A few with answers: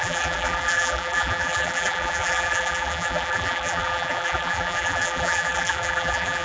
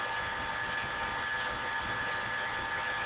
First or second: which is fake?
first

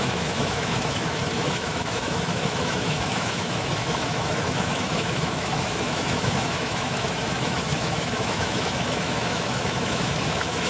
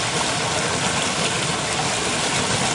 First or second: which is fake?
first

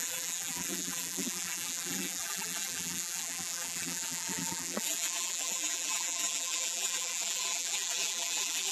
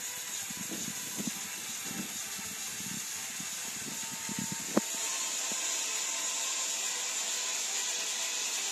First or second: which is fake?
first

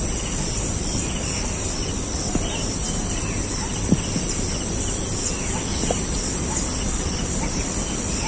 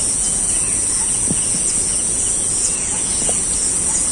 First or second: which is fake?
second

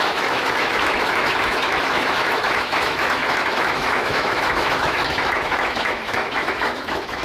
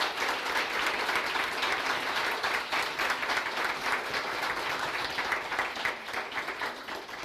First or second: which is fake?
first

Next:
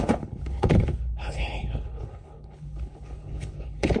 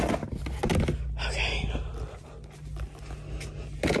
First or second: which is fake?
first